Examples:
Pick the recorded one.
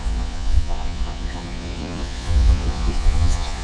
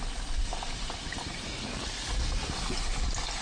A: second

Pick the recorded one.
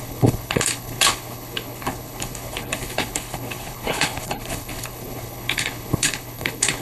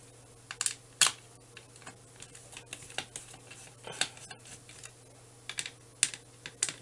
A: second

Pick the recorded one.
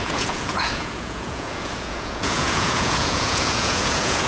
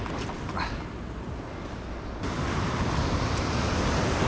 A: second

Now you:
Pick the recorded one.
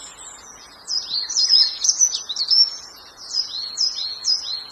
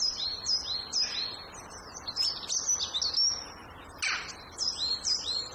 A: second